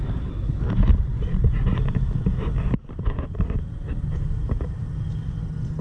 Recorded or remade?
recorded